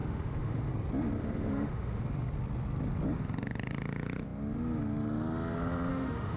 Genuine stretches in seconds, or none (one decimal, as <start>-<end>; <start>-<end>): 0.7-1.2; 2.0-5.9